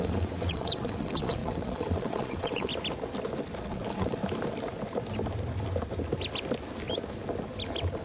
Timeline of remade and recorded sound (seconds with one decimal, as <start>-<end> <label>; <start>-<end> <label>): 0.0-2.7 remade; 2.7-3.6 recorded; 3.6-4.2 remade; 4.2-8.0 recorded